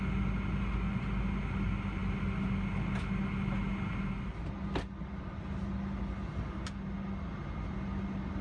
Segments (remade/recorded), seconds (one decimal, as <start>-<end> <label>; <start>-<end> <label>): 0.0-8.4 recorded